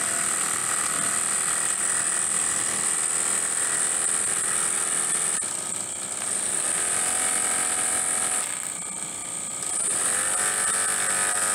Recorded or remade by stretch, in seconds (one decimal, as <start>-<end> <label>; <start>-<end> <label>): 0.0-11.5 recorded